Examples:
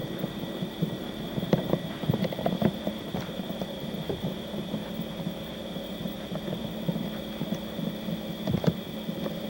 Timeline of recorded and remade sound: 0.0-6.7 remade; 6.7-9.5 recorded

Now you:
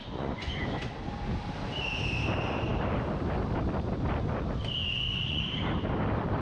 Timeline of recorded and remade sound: 0.0-0.9 remade; 0.9-4.8 recorded; 4.8-5.4 remade; 5.4-6.4 recorded

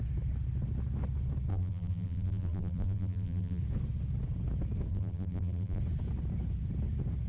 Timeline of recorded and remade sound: 0.0-1.5 recorded; 1.5-3.6 remade; 3.6-4.9 recorded; 4.9-5.8 remade; 5.8-7.3 recorded

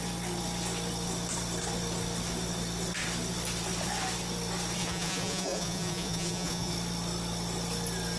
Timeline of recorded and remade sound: 0.0-4.8 recorded; 4.8-6.7 remade; 6.7-8.2 recorded

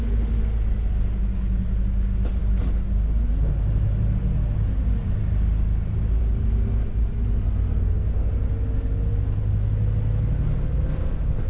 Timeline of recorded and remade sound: 0.0-7.7 recorded; 7.7-8.3 remade; 8.3-11.5 recorded